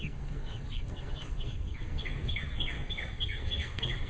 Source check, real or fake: fake